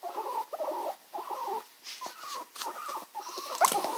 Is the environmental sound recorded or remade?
recorded